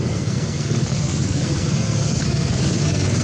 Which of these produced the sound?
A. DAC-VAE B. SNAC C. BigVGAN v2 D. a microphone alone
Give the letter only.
B